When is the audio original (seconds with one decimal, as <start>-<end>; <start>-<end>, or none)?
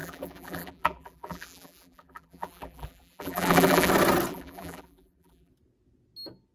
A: 3.9-4.3; 5.5-6.5